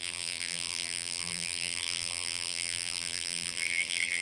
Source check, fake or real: fake